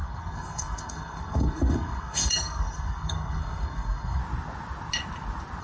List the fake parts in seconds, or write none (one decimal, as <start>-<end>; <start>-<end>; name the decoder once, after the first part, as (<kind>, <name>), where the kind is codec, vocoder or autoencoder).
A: 0.0-4.2 (codec, SNAC)